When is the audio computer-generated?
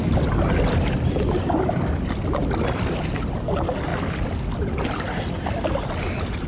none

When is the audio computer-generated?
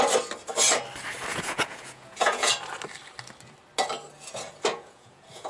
1.3-2.5 (vocoder, Vocos); 4.7-5.5